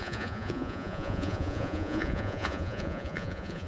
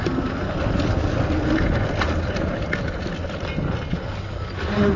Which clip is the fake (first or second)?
first